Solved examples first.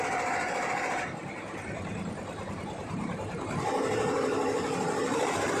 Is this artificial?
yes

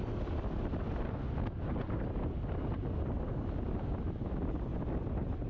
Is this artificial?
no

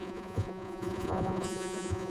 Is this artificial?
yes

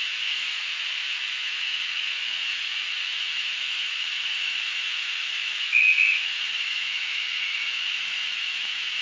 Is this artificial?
yes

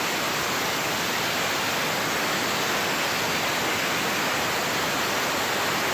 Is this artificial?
no